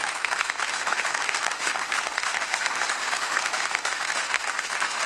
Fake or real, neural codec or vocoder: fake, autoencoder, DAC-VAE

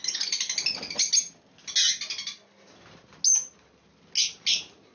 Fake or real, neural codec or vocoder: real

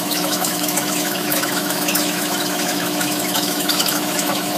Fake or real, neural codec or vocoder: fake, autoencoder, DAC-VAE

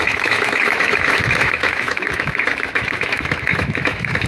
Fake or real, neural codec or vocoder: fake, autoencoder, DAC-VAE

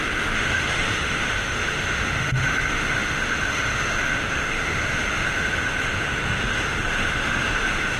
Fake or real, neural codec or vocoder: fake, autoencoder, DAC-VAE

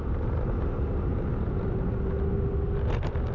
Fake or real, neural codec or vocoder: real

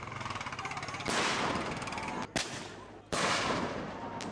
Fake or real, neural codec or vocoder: real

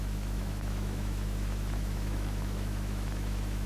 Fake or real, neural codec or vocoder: fake, autoencoder, DAC-VAE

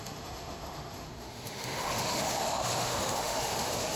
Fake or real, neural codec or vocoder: fake, autoencoder, DAC-VAE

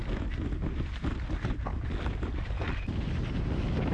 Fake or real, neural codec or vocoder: real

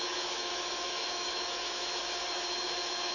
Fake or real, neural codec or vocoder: fake, autoencoder, DAC-VAE